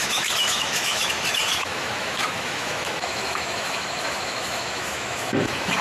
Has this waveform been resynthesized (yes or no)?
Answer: yes